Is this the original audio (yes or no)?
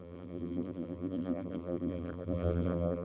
no